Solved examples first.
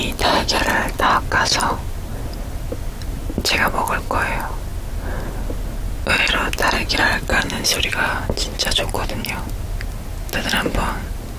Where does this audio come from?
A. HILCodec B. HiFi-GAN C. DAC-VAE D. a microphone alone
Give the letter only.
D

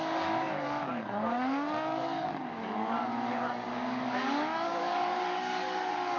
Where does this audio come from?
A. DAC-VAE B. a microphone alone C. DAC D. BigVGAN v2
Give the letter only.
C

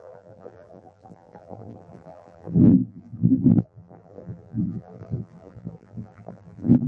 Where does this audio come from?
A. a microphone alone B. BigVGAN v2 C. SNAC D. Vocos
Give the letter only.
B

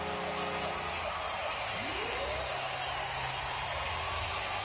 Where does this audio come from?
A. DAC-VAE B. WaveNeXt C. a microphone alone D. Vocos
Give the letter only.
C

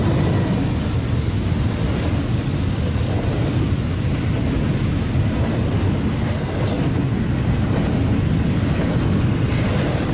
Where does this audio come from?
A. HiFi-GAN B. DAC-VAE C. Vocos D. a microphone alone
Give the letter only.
D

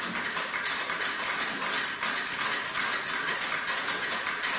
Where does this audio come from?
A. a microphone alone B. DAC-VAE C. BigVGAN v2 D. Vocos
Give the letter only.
A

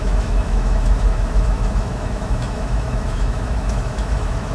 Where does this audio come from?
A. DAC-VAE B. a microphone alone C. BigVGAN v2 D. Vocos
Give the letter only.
A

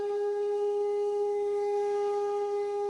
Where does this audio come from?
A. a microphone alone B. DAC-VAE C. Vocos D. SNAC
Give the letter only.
B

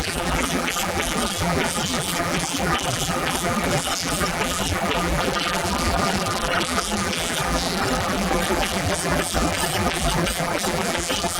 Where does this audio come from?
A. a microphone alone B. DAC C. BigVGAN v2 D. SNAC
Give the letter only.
C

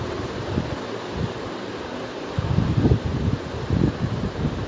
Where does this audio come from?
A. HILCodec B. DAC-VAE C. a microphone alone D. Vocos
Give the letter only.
C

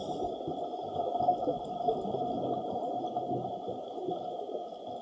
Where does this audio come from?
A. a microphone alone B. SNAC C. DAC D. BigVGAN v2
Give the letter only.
A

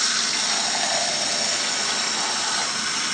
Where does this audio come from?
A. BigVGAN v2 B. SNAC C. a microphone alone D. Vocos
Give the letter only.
C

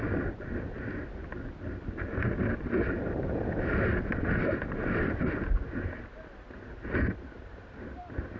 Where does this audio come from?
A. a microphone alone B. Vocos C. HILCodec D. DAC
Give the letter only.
A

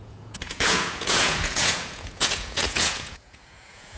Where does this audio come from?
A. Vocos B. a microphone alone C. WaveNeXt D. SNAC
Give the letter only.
A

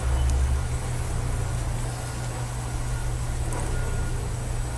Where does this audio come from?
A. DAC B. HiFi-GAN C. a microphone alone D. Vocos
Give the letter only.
C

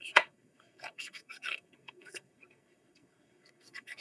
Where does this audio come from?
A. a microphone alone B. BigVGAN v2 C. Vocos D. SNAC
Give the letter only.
D